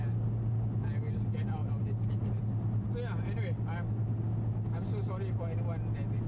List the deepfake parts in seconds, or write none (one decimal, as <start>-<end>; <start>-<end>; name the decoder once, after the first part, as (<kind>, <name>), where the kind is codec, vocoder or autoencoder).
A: none

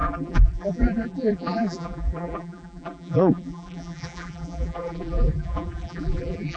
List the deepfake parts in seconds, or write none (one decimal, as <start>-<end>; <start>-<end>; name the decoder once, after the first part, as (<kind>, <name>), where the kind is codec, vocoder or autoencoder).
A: 0.0-6.6 (vocoder, BigVGAN v2)

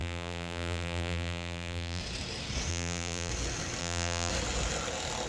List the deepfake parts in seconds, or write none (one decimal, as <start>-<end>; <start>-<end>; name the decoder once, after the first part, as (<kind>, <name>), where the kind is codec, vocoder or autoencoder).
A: 0.0-2.0 (vocoder, BigVGAN v2); 2.7-3.3; 3.8-4.3

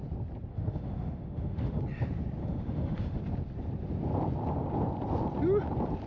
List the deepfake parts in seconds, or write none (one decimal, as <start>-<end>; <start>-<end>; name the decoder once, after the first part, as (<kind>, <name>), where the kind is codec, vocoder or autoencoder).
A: 0.5-1.8 (autoencoder, DAC-VAE); 2.4-3.2

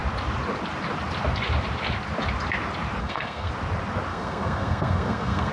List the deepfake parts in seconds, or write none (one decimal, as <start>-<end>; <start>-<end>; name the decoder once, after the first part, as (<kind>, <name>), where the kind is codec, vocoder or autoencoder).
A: 3.0-3.5 (codec, SNAC); 4.1-5.5

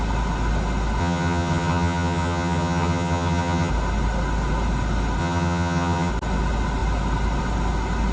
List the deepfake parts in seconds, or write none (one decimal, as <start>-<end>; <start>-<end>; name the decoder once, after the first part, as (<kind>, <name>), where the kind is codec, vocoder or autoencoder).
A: 1.0-3.7 (vocoder, HiFi-GAN); 5.2-6.1